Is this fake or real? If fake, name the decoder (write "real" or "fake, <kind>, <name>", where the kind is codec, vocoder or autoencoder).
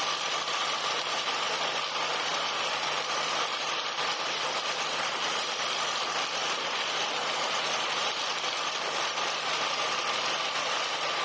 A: fake, vocoder, BigVGAN v2